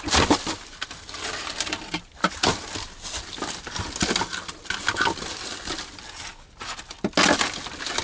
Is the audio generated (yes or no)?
no